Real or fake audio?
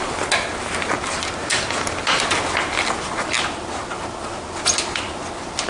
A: real